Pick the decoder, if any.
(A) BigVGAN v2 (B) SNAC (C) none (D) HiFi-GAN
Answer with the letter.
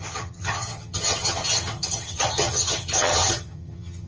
D